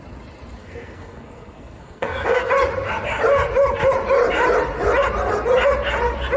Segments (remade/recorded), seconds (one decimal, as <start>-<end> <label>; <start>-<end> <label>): 0.0-0.6 recorded; 0.6-2.5 remade; 2.5-6.4 recorded